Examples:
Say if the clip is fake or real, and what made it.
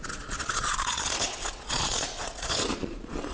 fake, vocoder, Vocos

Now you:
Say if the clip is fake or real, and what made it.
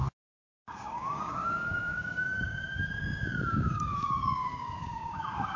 fake, codec, DAC